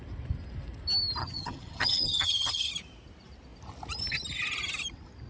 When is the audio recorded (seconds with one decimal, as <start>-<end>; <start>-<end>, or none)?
0.0-1.2; 2.7-5.3